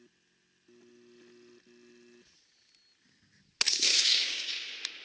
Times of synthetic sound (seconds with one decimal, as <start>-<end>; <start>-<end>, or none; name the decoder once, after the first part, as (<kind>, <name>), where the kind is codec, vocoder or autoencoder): 3.9-4.5 (codec, DAC)